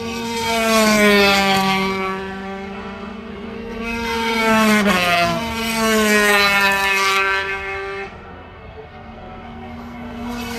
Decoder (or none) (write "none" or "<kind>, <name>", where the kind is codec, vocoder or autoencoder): codec, SNAC